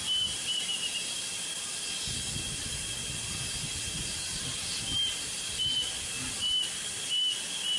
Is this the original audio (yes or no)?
yes